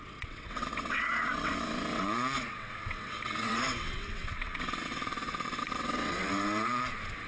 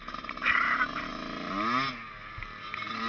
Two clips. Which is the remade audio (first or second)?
first